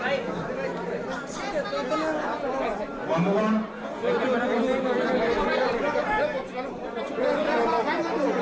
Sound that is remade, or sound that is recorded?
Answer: recorded